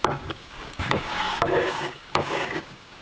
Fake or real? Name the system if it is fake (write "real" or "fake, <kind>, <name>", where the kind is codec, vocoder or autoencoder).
fake, codec, DAC